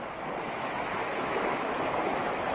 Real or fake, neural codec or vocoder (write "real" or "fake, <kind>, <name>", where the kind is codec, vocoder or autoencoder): fake, autoencoder, DAC-VAE